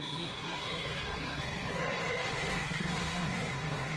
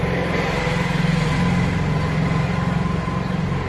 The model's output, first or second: first